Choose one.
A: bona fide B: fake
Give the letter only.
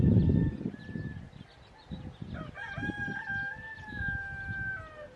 A